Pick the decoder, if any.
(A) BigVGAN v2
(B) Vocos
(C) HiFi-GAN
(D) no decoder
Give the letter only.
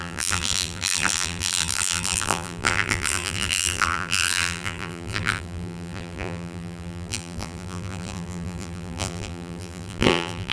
A